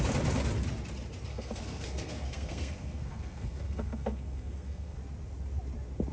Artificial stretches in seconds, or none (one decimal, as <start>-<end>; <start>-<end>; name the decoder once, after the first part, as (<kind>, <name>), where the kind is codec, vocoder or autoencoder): 1.3-5.0 (codec, SNAC)